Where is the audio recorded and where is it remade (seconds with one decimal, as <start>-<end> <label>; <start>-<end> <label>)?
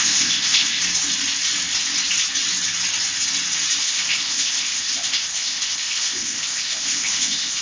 0.0-0.8 remade; 0.8-3.8 recorded; 3.8-7.6 remade